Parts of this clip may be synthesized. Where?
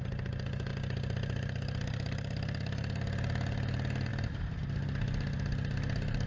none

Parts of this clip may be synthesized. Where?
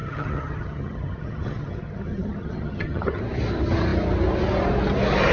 0.0-3.2 (vocoder, HiFi-GAN)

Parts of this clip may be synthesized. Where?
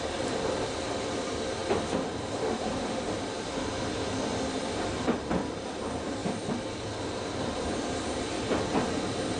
0.0-9.4 (vocoder, BigVGAN v2)